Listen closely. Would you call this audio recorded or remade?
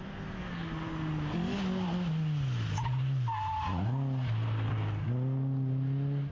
recorded